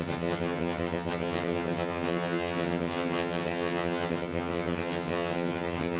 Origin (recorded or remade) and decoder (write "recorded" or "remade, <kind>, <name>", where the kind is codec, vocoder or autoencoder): remade, vocoder, HiFi-GAN